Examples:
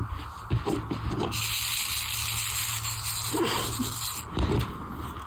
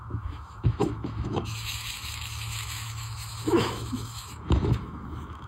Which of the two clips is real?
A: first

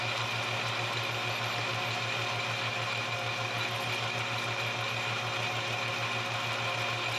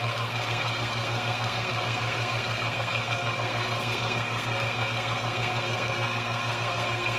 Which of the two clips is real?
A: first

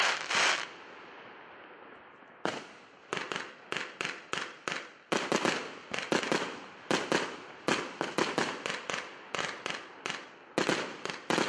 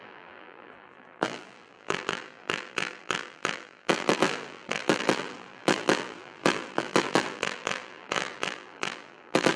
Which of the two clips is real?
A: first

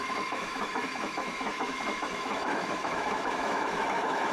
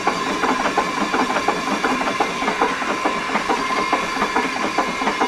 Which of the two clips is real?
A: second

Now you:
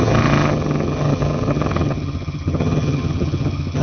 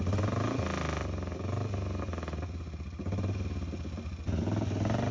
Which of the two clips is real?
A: second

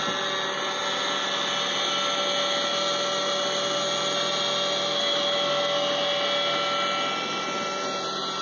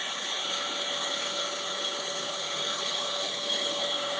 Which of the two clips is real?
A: first